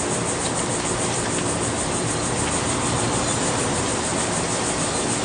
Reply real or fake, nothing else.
real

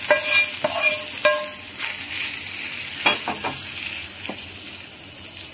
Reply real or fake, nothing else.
real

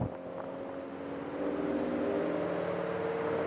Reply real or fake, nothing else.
real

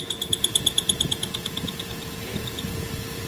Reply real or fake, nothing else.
fake